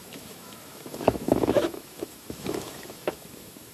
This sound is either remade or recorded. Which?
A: remade